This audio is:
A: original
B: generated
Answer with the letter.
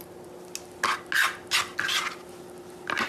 A